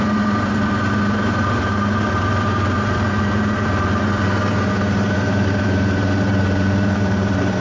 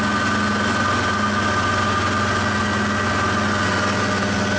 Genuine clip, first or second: second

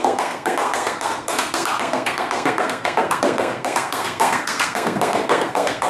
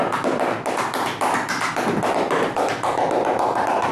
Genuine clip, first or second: second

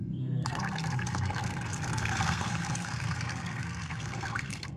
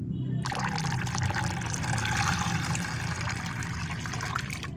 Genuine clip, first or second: second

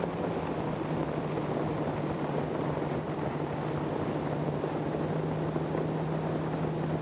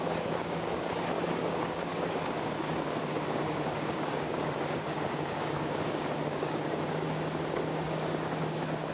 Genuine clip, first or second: first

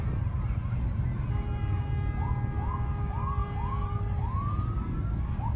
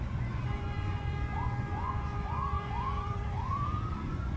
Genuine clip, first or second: first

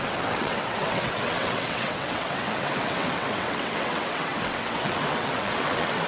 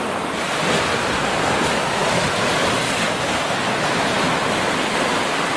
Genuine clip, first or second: second